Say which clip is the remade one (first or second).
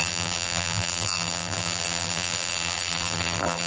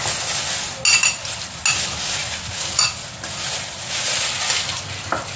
first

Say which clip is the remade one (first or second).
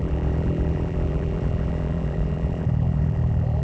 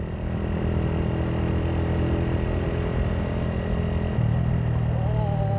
first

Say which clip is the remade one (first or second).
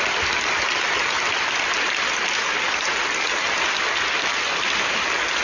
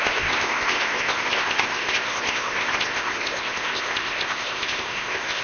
second